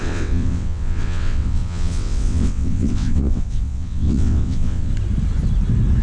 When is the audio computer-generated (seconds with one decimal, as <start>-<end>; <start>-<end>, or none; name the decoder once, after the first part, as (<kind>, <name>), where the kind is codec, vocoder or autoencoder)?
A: 0.0-4.9 (vocoder, WaveNeXt)